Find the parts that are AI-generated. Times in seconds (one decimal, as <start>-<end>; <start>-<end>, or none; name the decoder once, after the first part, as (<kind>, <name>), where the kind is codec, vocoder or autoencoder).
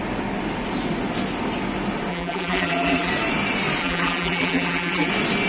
2.1-3.1 (vocoder, BigVGAN v2); 3.8-5.1